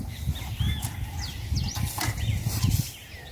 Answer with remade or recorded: recorded